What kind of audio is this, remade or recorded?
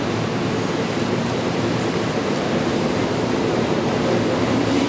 remade